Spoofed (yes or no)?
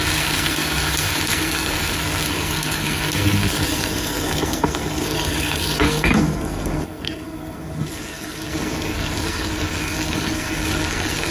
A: yes